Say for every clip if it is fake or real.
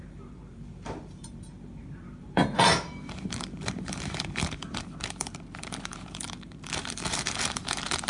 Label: fake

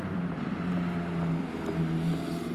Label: real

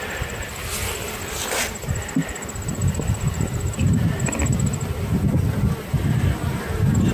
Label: real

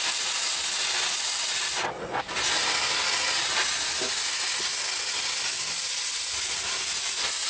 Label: real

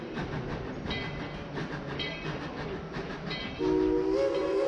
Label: real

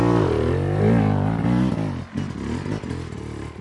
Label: real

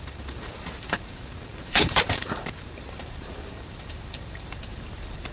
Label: fake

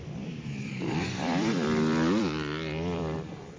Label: fake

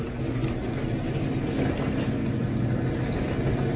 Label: real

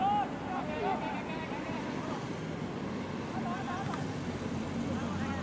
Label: real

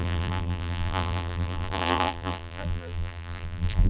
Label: fake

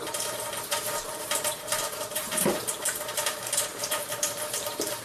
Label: fake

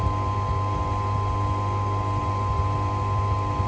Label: real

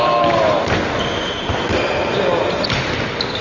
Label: real